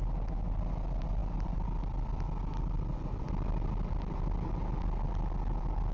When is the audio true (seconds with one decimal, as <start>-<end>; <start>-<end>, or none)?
0.0-5.9